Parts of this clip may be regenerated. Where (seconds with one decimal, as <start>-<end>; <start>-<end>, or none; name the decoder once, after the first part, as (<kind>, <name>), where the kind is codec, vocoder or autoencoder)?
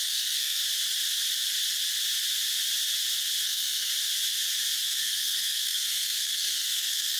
0.0-0.6 (codec, SNAC); 3.4-3.9; 4.8-7.2